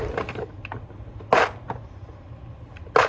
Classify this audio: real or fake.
real